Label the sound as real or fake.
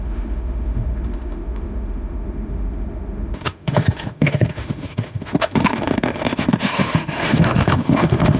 fake